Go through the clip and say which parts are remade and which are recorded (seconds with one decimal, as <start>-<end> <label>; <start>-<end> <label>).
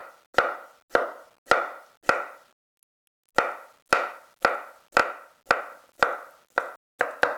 0.0-7.4 recorded